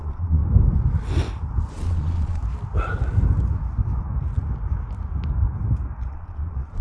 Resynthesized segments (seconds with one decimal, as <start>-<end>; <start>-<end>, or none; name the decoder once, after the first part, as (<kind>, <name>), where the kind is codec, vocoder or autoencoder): 0.0-0.4 (vocoder, Vocos); 1.7-2.4; 6.1-6.8